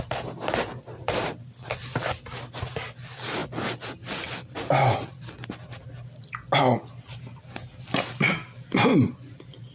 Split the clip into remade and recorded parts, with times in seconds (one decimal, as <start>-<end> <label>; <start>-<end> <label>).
0.0-9.7 recorded